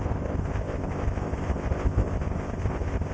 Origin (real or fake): fake